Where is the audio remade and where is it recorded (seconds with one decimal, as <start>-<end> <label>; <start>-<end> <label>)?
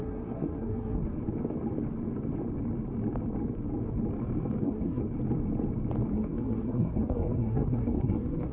0.0-1.0 remade; 1.0-4.6 recorded; 4.6-5.0 remade; 5.0-6.1 recorded; 6.1-8.5 remade